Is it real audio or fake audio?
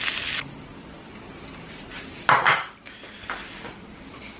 real